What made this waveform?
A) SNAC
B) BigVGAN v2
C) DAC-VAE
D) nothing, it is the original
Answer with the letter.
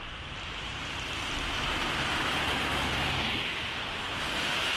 B